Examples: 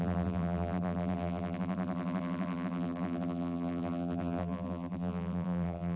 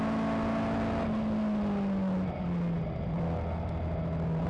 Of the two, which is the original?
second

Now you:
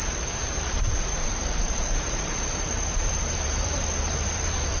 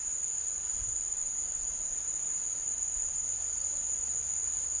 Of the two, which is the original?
second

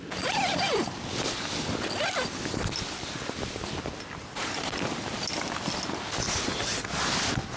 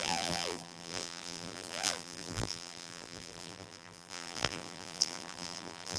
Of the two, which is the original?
first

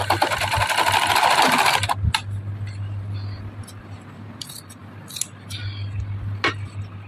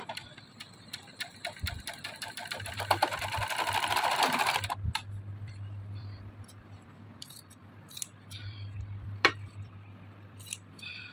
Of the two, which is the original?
first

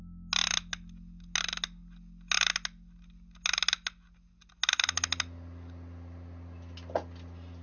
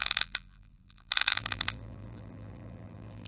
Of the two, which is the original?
first